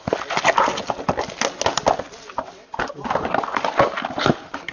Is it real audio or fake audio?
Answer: real